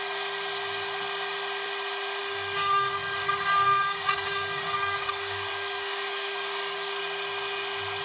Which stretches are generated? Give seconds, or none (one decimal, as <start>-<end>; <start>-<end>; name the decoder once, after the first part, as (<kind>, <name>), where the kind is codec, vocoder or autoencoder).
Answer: 2.2-7.0 (codec, DAC)